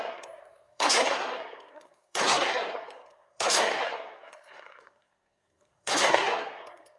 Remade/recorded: remade